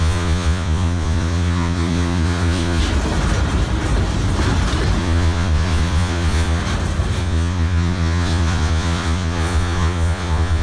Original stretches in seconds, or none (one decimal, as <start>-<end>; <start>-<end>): 2.8-5.0; 6.6-7.2